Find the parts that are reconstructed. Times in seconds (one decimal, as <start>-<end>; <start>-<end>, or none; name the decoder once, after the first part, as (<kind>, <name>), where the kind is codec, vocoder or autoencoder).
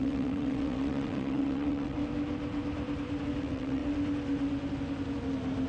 0.0-2.0 (vocoder, WaveNeXt); 3.4-3.8